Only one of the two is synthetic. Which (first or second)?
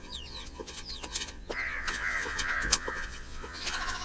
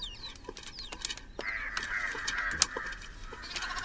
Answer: first